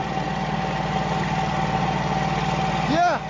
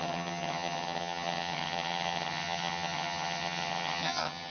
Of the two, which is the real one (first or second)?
first